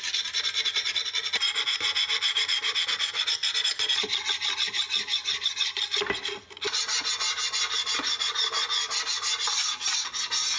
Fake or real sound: real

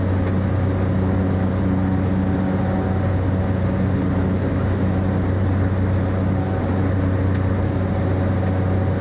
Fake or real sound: real